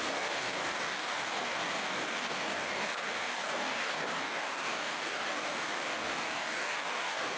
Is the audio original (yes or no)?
no